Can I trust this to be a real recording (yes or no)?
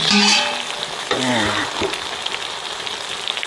yes